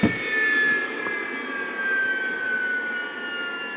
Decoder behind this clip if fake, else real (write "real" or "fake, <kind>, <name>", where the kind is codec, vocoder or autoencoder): real